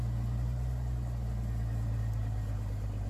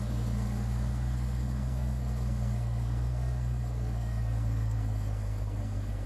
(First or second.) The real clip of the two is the first